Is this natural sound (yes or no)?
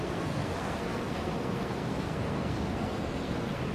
no